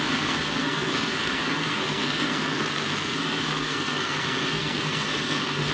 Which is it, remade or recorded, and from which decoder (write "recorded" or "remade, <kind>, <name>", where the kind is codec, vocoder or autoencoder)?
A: remade, codec, SNAC